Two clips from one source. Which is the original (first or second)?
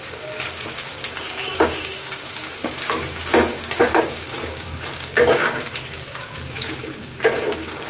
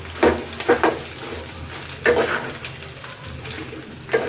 second